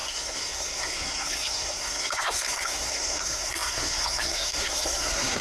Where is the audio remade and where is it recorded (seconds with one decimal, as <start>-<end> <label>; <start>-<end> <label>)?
0.0-5.4 remade